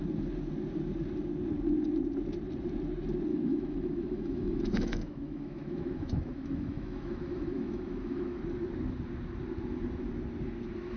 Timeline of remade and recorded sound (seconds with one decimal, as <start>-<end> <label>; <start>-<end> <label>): 0.0-3.3 recorded; 3.3-8.4 remade; 8.4-11.0 recorded